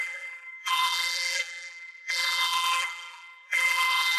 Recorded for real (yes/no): no